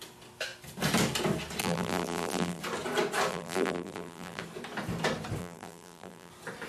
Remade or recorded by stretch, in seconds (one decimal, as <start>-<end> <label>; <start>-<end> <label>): 0.0-1.6 recorded; 1.6-2.6 remade; 2.6-3.3 recorded; 3.3-4.4 remade; 4.4-5.4 recorded; 5.4-6.3 remade; 6.3-6.7 recorded